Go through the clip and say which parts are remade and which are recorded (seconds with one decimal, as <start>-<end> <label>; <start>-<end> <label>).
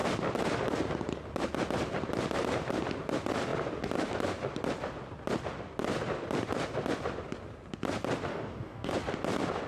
0.0-8.3 recorded; 8.3-8.9 remade; 8.9-9.7 recorded